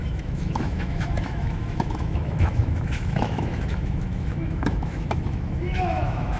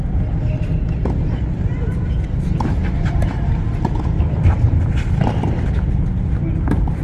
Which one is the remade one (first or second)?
first